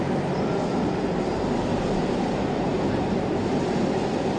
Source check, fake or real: real